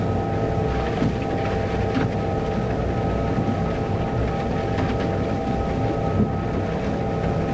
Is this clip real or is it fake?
real